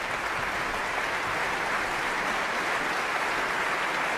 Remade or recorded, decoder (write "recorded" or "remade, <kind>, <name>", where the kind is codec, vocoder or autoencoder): recorded